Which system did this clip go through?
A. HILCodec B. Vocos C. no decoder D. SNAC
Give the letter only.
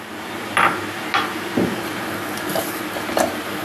C